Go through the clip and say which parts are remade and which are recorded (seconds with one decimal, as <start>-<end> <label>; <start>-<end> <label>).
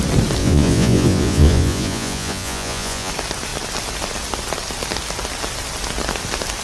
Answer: 0.0-0.4 recorded; 0.4-3.1 remade; 3.1-6.6 recorded